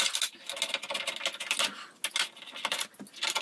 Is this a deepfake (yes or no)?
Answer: no